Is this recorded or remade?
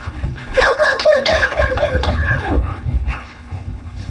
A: remade